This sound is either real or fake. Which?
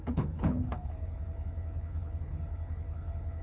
fake